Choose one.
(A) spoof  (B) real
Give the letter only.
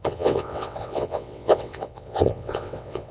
A